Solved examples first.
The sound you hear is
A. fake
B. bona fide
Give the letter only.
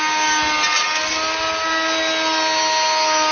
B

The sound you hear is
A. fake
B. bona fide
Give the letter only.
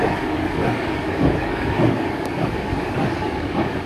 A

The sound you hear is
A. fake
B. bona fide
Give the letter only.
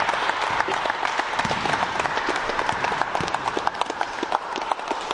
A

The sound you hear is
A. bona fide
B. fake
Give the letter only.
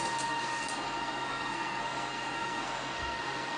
B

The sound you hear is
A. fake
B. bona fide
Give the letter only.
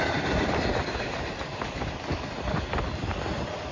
B